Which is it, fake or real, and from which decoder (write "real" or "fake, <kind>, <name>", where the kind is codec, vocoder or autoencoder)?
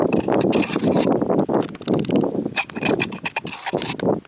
real